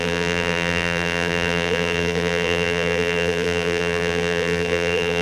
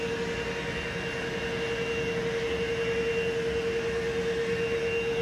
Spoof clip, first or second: first